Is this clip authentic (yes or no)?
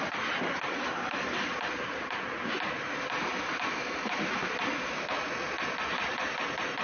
yes